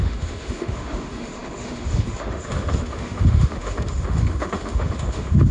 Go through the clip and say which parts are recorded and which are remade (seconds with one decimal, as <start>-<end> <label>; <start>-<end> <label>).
0.0-5.5 remade